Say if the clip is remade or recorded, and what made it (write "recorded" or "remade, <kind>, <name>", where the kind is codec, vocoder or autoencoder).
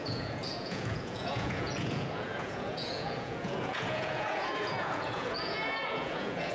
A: remade, vocoder, Vocos